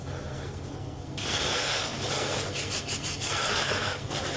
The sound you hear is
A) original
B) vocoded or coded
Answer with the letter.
B